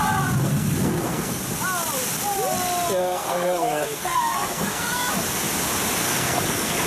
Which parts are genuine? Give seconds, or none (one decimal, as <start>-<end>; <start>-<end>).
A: 0.0-0.4; 1.4-3.0; 5.1-6.0